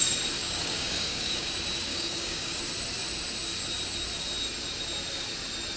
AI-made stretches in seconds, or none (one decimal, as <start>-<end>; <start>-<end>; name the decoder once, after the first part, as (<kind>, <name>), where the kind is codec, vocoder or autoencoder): 0.4-1.5 (codec, DAC); 1.9-2.6